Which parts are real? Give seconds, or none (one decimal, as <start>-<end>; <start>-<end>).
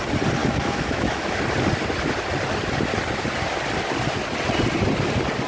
0.0-0.4; 1.4-5.5